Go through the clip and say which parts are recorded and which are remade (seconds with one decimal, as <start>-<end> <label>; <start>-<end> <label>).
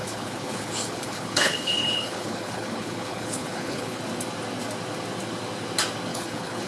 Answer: 0.0-4.0 remade; 4.0-6.1 recorded; 6.1-6.7 remade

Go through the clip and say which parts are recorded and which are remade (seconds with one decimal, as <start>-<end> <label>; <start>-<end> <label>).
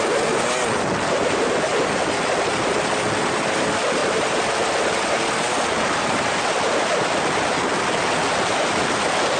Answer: 0.0-9.4 recorded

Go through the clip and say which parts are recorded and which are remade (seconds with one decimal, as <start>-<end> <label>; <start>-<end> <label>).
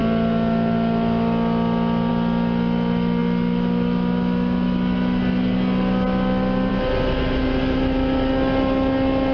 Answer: 0.0-9.3 recorded